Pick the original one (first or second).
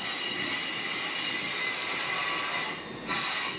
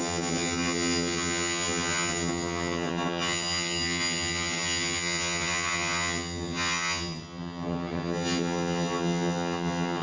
first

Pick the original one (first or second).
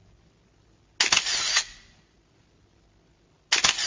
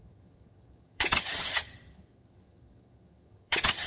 first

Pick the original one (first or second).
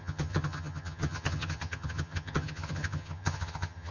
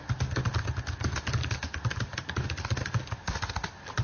second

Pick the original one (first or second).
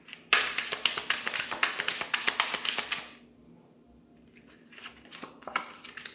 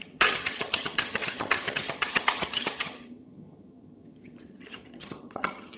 first